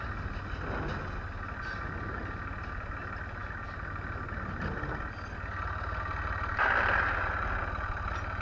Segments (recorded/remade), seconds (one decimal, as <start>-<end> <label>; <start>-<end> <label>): 0.0-8.4 recorded